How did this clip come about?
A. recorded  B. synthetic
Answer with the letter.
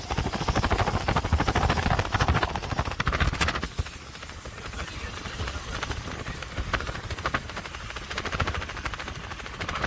A